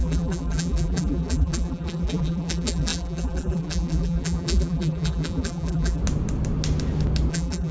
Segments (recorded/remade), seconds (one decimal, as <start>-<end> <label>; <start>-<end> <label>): 0.0-6.0 remade; 6.0-7.3 recorded; 7.3-7.7 remade